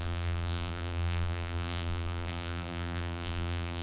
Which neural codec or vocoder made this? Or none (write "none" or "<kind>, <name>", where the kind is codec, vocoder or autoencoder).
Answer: vocoder, BigVGAN v2